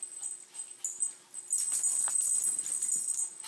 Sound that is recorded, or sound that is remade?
recorded